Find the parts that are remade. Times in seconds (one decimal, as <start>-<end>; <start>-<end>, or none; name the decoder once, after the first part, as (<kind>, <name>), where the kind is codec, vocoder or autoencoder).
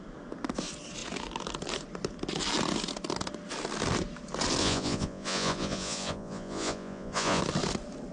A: 4.6-7.4 (vocoder, Vocos)